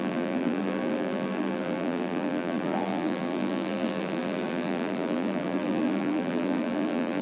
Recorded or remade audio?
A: remade